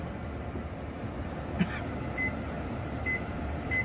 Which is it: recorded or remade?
recorded